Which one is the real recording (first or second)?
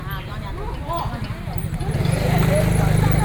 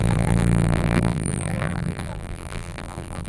first